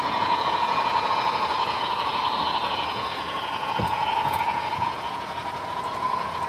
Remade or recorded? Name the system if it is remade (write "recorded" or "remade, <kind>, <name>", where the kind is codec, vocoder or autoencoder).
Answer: remade, vocoder, Vocos